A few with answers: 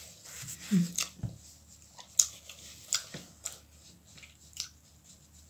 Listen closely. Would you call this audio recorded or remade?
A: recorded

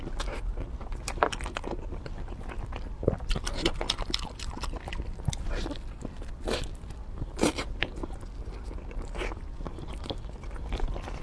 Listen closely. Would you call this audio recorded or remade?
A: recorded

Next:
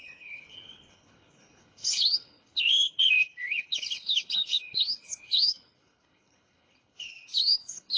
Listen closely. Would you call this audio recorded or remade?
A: remade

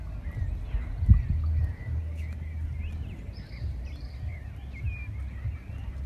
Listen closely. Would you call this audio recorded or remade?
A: recorded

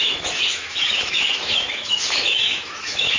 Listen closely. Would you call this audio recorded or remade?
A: remade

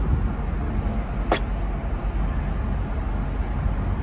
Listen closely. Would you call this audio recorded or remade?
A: recorded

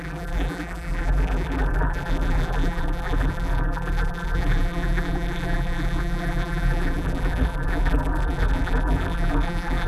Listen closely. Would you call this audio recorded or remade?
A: remade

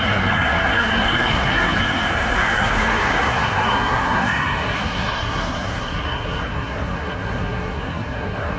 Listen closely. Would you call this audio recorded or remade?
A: remade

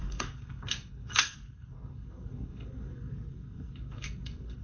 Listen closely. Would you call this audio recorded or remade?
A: remade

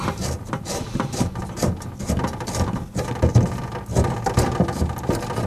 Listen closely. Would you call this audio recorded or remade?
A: recorded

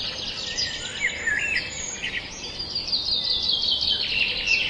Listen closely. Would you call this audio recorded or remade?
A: recorded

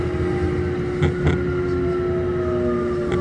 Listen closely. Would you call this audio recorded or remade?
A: recorded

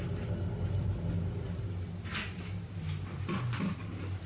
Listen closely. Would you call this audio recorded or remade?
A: recorded